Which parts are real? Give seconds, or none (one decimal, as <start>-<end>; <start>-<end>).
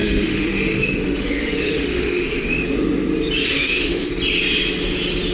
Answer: 2.6-3.5; 4.1-5.3